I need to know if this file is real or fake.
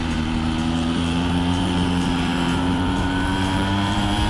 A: fake